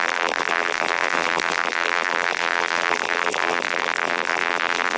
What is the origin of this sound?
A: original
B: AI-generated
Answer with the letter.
B